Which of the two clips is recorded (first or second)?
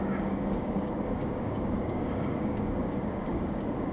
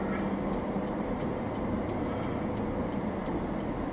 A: second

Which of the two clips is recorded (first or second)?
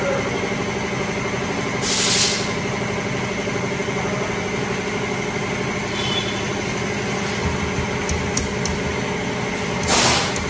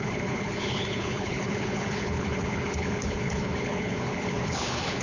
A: first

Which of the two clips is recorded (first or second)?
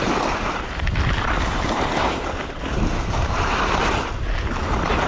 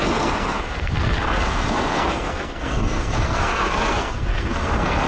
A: first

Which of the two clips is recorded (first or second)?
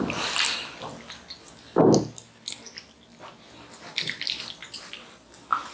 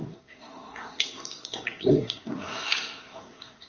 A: first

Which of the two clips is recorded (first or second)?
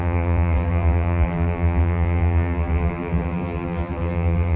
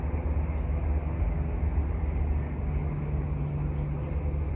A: second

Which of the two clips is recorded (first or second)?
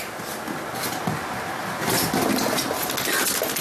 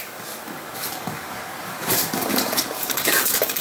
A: first